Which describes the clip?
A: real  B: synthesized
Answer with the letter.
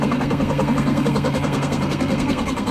B